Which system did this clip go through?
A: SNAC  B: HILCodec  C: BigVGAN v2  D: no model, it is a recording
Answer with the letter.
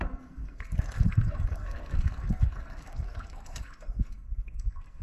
A